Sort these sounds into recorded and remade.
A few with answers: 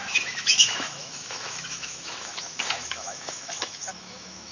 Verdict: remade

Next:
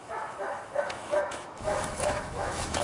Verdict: remade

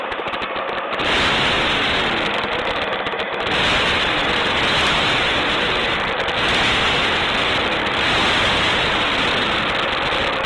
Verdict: recorded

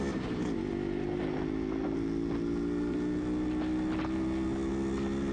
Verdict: recorded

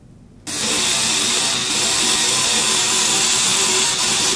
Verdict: recorded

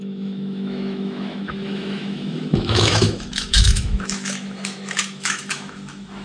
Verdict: remade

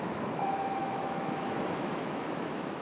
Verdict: remade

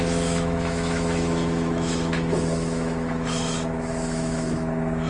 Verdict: remade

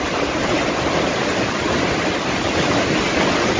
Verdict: recorded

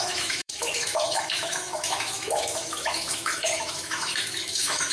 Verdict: remade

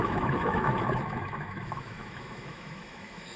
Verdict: remade